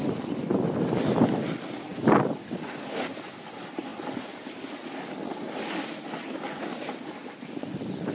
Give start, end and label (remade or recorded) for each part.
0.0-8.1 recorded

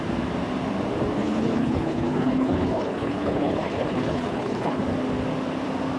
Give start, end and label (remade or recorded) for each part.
0.0-1.2 recorded; 1.2-4.8 remade; 4.8-6.0 recorded